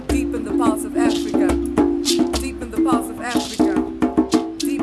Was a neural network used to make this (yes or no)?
no